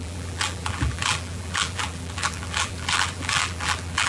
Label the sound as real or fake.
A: fake